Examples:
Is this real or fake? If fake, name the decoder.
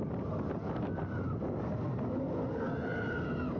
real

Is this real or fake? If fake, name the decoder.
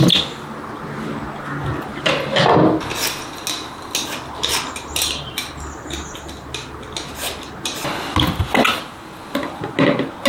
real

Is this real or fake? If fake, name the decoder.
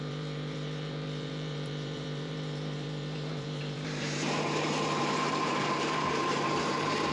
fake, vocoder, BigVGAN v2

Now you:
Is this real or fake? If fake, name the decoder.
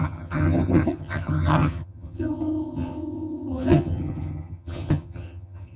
fake, vocoder, HiFi-GAN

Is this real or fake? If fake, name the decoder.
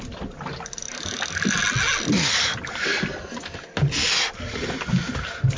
real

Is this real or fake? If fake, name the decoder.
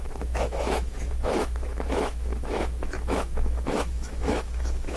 fake, autoencoder, DAC-VAE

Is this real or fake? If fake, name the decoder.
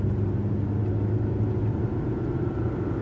real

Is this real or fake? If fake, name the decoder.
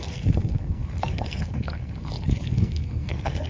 fake, codec, SNAC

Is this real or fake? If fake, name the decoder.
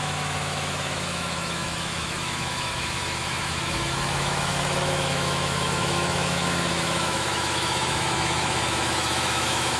fake, autoencoder, DAC-VAE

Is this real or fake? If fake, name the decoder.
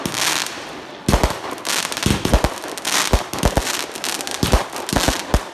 real